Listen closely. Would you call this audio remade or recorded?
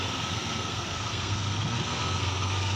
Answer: remade